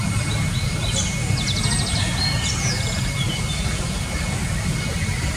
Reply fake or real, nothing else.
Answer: fake